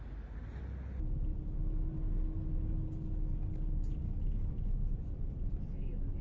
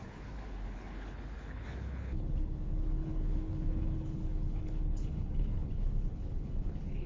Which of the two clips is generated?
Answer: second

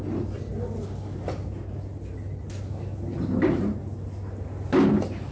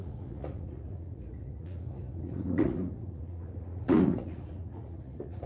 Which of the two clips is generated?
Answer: second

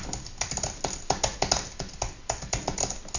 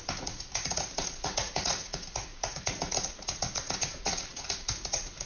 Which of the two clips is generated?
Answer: second